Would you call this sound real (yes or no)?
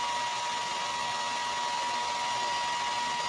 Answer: yes